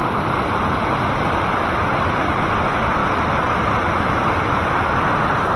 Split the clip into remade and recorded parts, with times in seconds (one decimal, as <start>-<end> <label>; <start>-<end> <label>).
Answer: 0.0-5.6 recorded